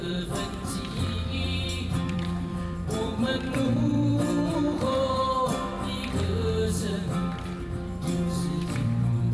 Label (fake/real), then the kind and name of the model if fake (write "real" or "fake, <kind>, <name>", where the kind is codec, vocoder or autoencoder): fake, vocoder, BigVGAN v2